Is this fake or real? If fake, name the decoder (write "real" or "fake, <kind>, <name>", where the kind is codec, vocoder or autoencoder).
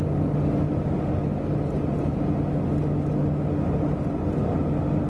real